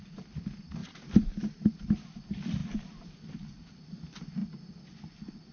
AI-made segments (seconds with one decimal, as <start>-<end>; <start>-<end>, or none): 0.8-1.8